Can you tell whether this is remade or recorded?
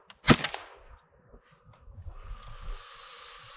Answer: recorded